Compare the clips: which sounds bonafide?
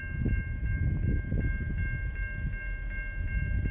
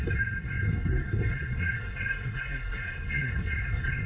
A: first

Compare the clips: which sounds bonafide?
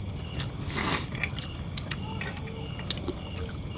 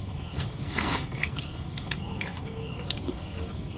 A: first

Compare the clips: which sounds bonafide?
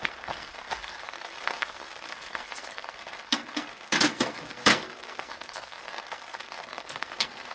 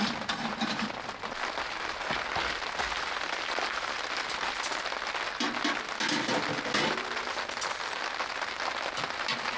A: second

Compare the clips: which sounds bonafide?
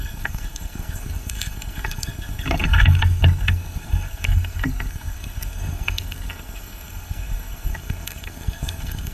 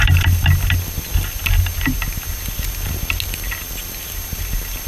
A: second